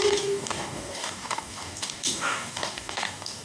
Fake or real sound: fake